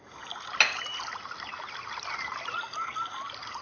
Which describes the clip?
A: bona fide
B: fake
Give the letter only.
A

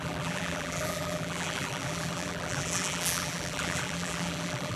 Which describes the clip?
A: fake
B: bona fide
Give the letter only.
A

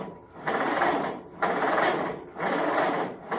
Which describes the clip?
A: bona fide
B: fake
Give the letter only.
B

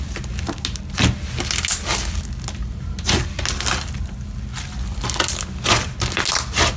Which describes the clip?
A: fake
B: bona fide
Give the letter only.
B